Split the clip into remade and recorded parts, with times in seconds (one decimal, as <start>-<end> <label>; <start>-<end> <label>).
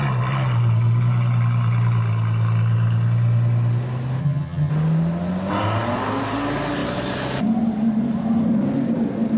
0.0-4.2 recorded; 4.2-4.7 remade; 4.7-9.4 recorded